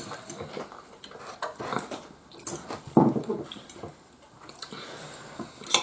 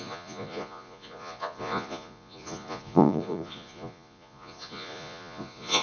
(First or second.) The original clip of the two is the first